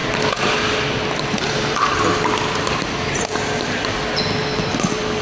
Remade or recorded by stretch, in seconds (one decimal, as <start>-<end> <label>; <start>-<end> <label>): 0.0-5.2 recorded

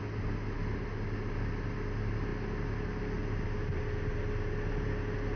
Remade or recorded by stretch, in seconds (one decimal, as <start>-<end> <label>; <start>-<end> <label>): 0.0-5.4 recorded